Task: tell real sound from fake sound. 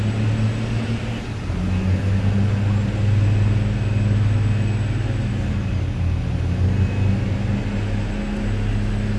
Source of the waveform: real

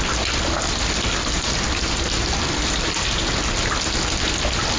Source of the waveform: real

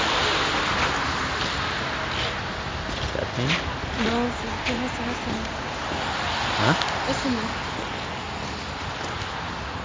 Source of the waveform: real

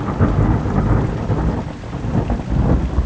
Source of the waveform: real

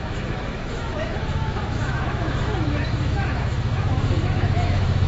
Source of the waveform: fake